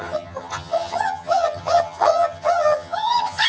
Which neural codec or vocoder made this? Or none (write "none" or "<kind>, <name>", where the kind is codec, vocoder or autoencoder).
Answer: vocoder, HiFi-GAN